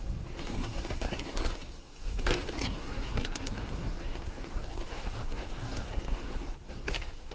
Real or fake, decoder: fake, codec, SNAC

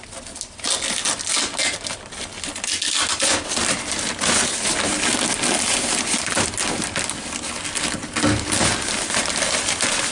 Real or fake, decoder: real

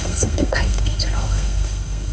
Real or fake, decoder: fake, codec, SNAC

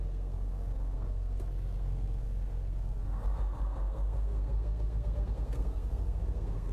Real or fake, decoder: fake, codec, SNAC